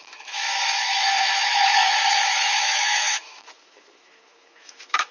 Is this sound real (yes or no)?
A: no